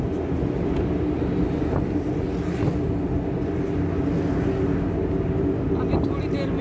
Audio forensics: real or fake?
real